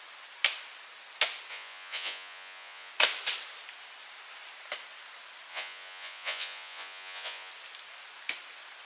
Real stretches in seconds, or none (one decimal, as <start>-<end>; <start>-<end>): 0.0-1.5; 2.9-5.5; 7.5-8.9